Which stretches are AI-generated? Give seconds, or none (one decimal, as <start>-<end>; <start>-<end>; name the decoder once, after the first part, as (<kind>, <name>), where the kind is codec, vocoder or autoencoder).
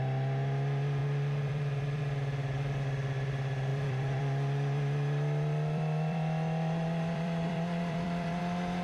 1.0-2.0 (vocoder, BigVGAN v2); 3.7-8.4